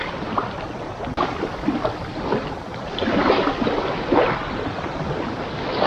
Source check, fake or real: real